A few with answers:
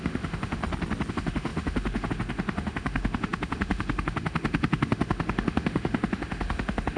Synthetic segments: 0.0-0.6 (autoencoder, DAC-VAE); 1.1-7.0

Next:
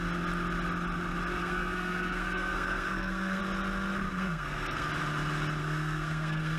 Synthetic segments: 1.4-3.4 (codec, SNAC); 4.1-4.9; 5.6-6.6

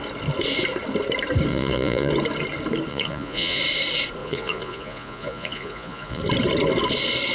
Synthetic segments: 1.5-2.1 (vocoder, Vocos); 2.9-3.6; 4.2-6.2

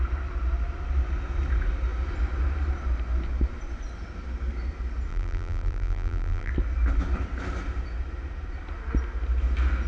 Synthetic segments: 5.1-6.5 (vocoder, BigVGAN v2)

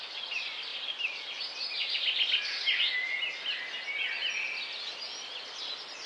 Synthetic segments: 0.7-1.2 (vocoder, BigVGAN v2)

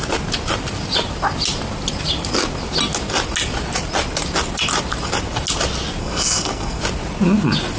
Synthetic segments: 6.0-6.8 (codec, SNAC)